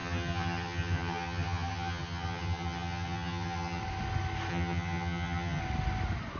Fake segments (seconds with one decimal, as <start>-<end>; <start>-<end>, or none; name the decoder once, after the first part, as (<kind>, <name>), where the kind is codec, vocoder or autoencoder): 0.0-3.8 (vocoder, HiFi-GAN); 4.5-5.6